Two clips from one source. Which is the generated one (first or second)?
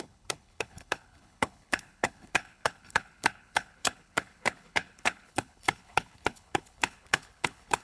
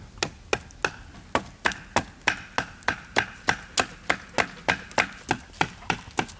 first